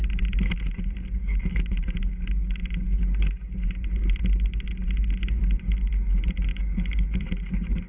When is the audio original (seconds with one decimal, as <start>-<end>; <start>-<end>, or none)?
0.0-1.2; 3.0-6.5; 7.2-7.9